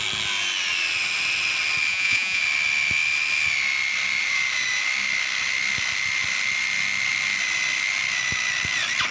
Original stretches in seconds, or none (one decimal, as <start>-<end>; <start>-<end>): 0.0-1.9; 2.4-9.1